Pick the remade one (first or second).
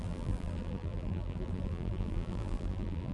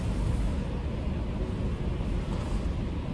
first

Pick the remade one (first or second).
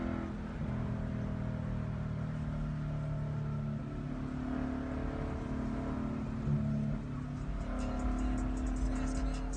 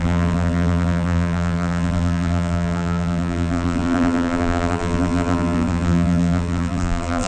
second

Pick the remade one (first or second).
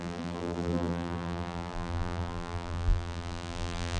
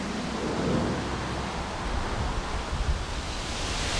first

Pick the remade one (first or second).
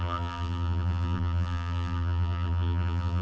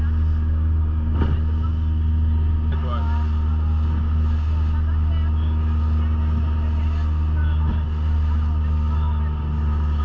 first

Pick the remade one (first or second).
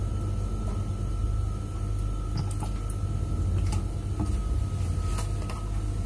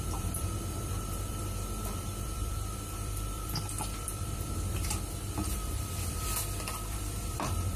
second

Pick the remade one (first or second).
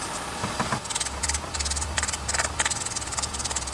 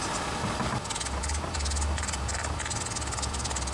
first